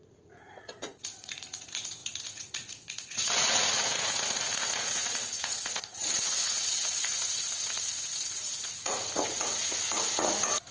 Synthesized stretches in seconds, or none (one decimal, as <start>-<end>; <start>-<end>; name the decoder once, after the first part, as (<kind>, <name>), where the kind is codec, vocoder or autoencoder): 0.0-10.7 (vocoder, Vocos)